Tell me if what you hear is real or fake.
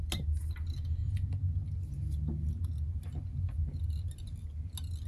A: real